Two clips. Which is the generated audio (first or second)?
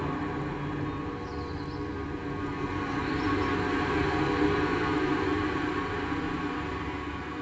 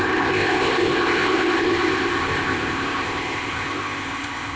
second